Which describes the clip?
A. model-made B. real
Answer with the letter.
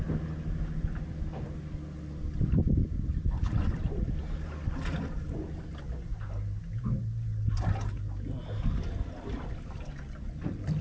B